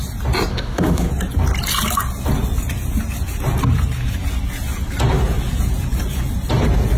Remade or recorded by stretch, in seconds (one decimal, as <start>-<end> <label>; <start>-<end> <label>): 0.0-0.5 recorded; 0.5-1.1 remade; 1.1-7.0 recorded